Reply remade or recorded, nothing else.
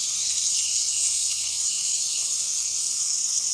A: remade